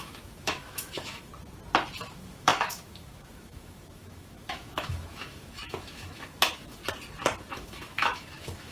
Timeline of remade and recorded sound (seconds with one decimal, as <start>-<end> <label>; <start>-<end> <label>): 0.0-1.3 remade; 1.3-2.1 recorded; 2.1-6.8 remade; 6.8-7.5 recorded; 7.5-8.7 remade